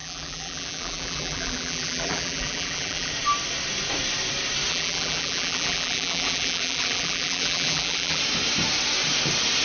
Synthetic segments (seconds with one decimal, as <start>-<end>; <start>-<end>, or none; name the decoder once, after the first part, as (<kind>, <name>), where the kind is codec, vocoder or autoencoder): 0.0-3.1 (vocoder, BigVGAN v2); 4.7-8.2